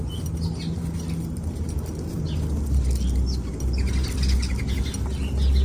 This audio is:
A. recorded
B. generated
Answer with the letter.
A